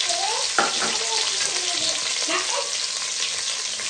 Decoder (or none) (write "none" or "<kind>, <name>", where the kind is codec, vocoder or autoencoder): none